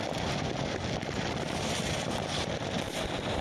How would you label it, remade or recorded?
remade